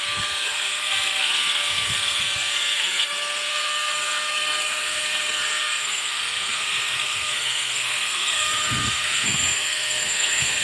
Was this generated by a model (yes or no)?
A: yes